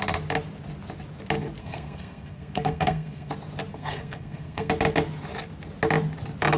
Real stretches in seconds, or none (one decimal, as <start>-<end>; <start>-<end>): 0.0-1.6; 3.3-3.7; 4.7-6.6